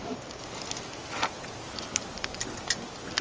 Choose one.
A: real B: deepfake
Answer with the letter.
A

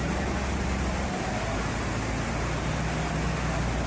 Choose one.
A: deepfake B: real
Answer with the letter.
B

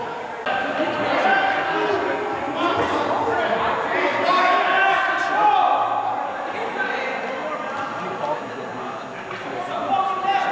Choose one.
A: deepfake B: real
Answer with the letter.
B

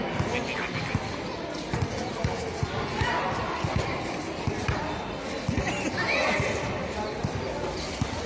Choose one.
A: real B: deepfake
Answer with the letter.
A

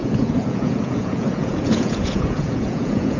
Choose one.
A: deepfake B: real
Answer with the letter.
A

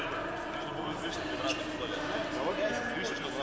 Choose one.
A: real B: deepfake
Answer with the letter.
A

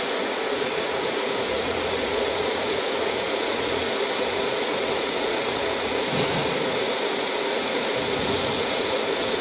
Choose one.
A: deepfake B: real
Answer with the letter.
A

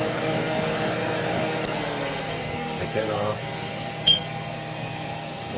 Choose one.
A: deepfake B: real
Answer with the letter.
A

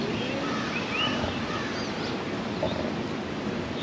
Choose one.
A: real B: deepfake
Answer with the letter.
A